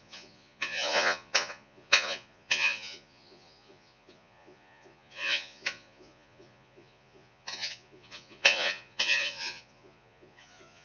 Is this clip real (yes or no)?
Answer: no